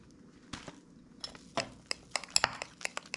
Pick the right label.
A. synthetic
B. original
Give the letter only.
B